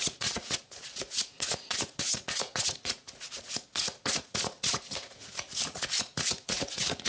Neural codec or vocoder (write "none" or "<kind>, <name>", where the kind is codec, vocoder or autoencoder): vocoder, Vocos